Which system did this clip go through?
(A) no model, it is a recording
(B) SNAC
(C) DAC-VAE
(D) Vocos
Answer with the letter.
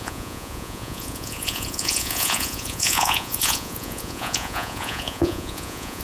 D